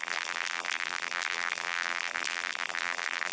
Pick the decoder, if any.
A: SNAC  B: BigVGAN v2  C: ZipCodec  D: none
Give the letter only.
B